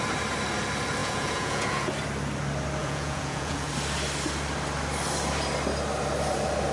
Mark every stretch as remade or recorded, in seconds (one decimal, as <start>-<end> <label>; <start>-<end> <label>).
0.0-1.0 recorded; 1.0-1.9 remade; 1.9-2.8 recorded; 2.8-3.7 remade; 3.7-6.7 recorded